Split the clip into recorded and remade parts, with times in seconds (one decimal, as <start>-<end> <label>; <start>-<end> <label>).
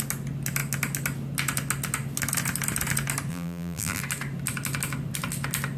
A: 0.0-3.3 recorded; 3.3-4.0 remade; 4.0-5.8 recorded